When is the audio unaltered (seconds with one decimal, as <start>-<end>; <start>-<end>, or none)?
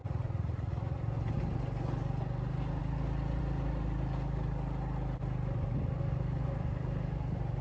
1.0-7.6